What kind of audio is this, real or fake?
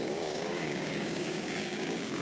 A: fake